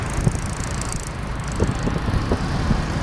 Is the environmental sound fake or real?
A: real